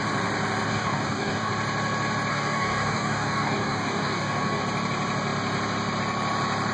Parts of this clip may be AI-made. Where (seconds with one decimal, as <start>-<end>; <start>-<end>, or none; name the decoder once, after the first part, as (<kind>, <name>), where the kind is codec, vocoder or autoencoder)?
0.7-1.5 (codec, DAC); 2.3-4.6